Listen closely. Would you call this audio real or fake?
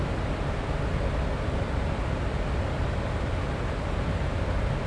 real